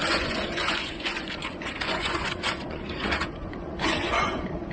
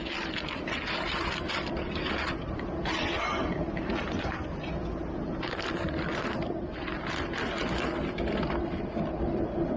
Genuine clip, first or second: second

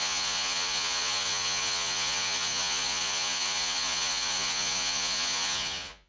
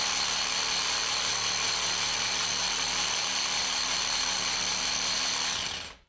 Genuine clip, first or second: second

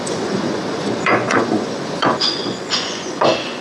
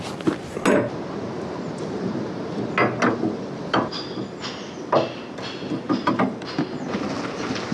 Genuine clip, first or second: second